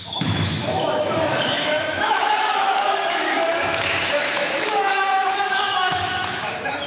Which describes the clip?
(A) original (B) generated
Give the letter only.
B